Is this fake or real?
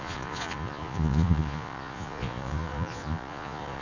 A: fake